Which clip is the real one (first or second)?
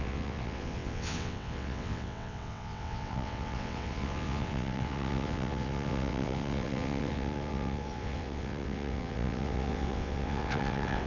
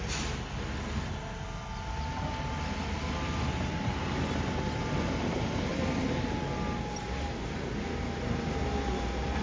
second